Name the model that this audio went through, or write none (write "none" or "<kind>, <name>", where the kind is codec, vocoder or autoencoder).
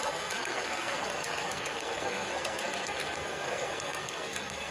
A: codec, SNAC